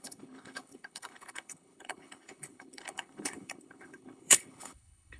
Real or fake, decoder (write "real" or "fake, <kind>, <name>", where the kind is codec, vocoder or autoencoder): fake, codec, HILCodec